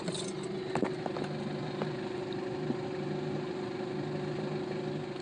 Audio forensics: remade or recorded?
recorded